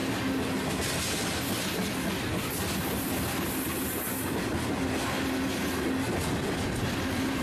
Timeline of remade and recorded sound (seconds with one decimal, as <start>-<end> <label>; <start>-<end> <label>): 0.0-7.4 recorded